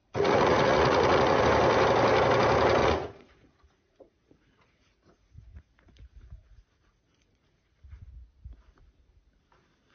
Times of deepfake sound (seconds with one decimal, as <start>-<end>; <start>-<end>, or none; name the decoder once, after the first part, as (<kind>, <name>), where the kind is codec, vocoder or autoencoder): 0.0-1.4 (vocoder, Vocos); 2.8-7.8